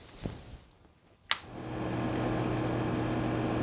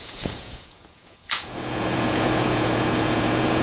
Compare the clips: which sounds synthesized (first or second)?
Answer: second